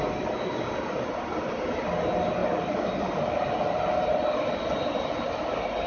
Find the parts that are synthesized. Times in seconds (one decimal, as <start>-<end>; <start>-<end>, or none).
none